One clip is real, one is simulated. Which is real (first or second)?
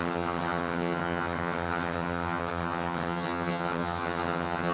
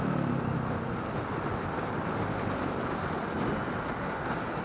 second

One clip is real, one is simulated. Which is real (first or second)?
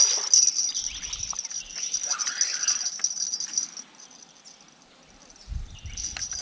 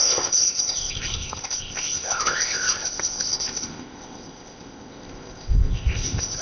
first